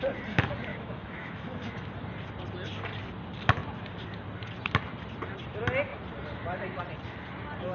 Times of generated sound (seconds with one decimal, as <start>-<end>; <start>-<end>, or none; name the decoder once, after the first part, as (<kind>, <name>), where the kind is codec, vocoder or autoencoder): 0.7-1.9 (autoencoder, DAC-VAE)